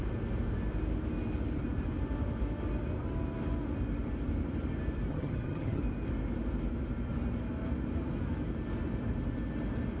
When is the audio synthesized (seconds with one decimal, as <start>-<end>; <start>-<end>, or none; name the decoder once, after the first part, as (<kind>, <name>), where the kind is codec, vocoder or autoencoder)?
5.1-5.8 (vocoder, HiFi-GAN)